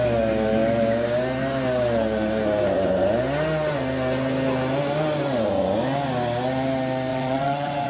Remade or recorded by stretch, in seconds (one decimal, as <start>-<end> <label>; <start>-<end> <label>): 0.0-7.1 recorded; 7.1-7.9 remade